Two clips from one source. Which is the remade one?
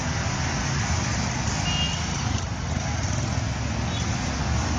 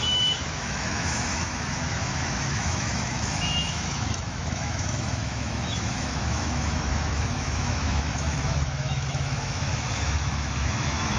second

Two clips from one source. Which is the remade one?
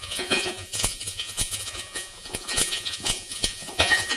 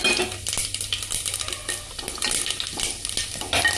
first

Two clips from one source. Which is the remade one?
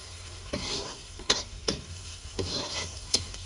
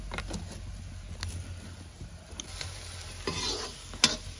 first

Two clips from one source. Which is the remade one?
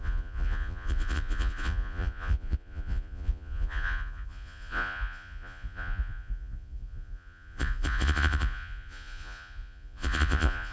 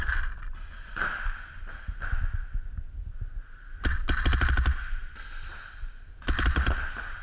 first